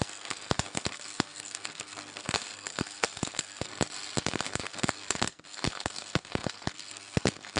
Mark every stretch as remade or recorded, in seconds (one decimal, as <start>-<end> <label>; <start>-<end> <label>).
0.0-3.7 remade; 3.7-4.2 recorded; 4.2-7.6 remade